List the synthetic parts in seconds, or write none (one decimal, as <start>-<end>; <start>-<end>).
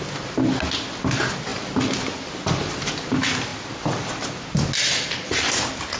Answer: 1.5-2.6